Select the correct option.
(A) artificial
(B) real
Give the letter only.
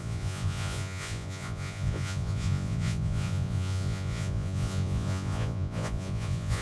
A